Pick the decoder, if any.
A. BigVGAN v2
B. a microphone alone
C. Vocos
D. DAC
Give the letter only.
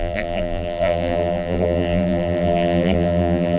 A